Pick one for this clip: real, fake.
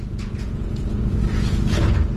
fake